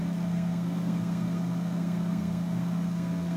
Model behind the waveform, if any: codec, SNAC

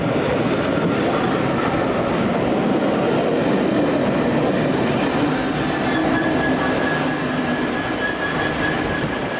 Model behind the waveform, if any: none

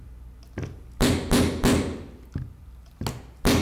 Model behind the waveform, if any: none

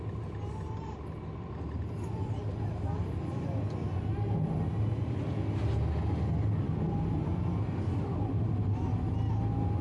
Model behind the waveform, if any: none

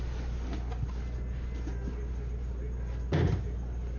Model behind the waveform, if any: none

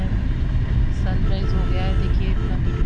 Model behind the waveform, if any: none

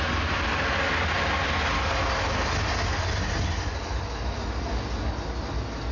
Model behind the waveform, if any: none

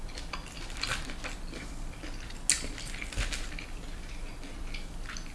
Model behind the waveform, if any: none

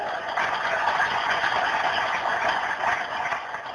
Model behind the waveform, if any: vocoder, Vocos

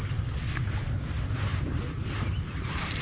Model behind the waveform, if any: none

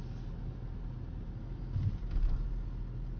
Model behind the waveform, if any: none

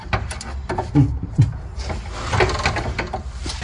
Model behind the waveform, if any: none